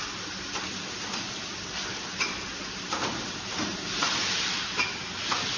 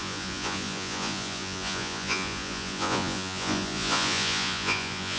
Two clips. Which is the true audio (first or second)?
first